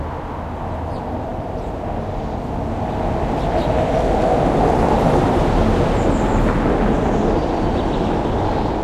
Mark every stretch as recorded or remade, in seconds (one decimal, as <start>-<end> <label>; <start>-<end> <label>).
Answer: 0.0-8.8 recorded

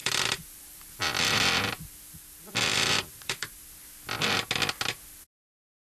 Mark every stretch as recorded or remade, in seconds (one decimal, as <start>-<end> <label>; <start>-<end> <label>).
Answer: 0.0-1.7 remade; 1.7-2.7 recorded; 2.7-3.7 remade; 3.7-5.9 recorded

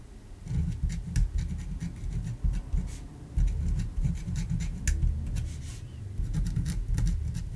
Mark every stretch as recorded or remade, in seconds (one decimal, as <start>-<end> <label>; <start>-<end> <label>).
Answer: 0.0-3.9 recorded; 3.9-4.8 remade; 4.8-7.6 recorded